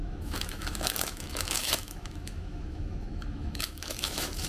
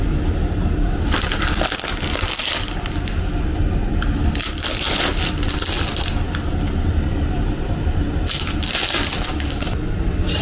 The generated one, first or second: first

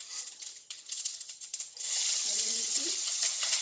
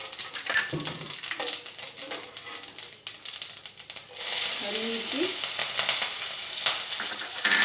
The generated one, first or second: first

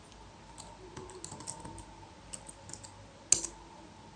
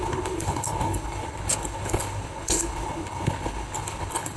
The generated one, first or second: second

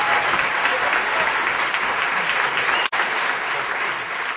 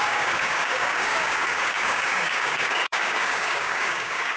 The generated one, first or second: second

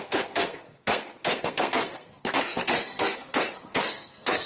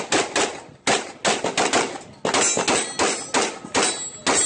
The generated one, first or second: first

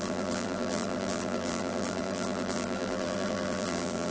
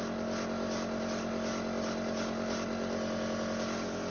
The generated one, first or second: first